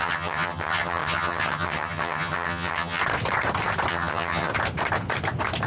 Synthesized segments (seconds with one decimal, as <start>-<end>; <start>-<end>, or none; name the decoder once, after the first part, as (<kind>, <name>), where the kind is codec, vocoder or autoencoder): 0.0-3.0 (vocoder, HiFi-GAN); 3.9-4.5